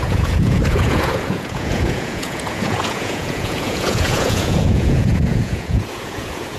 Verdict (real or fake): fake